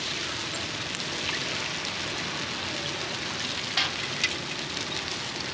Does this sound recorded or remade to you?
recorded